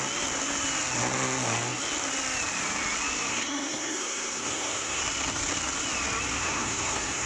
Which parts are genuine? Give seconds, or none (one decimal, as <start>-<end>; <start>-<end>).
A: 0.0-3.3; 5.0-6.4